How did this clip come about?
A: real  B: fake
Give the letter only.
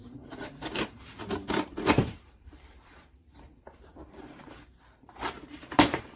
B